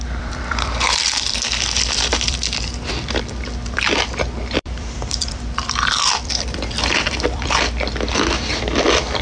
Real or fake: fake